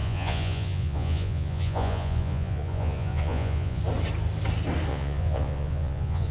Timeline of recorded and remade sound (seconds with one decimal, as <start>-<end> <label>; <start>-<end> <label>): 0.0-3.8 remade; 3.8-4.9 recorded; 4.9-6.3 remade